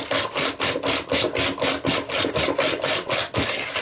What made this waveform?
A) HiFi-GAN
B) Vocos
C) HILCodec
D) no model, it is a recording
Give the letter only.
D